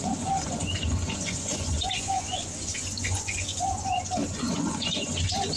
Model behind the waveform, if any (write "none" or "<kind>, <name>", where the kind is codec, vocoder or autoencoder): vocoder, Vocos